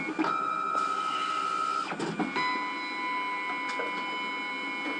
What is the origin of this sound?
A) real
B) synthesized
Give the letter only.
A